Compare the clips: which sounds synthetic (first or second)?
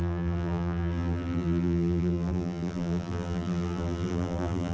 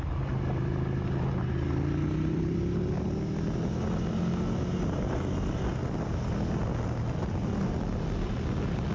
first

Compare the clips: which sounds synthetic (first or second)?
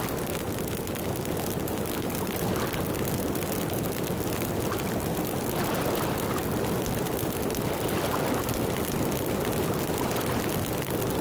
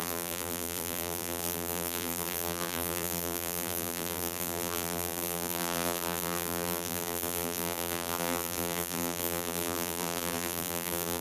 second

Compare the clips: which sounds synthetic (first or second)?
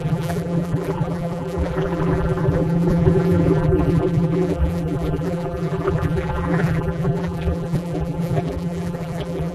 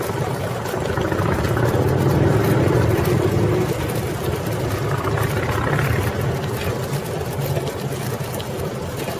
first